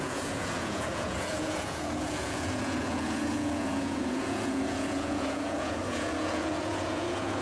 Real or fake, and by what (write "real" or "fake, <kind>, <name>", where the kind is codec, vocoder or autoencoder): fake, vocoder, Vocos